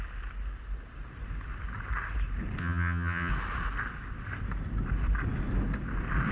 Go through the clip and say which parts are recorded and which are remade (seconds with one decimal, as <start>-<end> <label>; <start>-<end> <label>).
0.0-2.6 recorded; 2.6-3.3 remade; 3.3-6.3 recorded